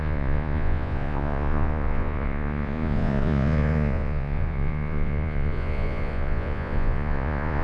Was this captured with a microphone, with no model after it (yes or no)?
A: no